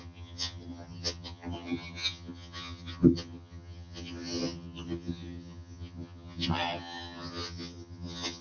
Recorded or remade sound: remade